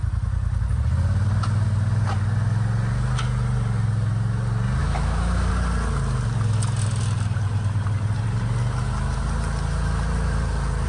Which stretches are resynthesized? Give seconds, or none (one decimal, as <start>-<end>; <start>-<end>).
4.8-5.5